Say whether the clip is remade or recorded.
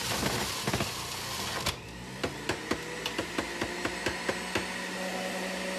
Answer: recorded